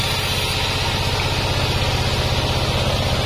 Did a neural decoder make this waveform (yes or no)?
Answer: no